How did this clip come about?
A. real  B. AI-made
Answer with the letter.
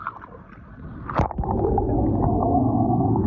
A